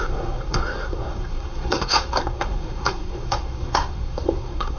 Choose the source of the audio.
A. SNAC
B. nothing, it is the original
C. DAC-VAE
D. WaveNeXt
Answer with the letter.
A